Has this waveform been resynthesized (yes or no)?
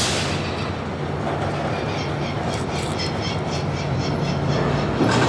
no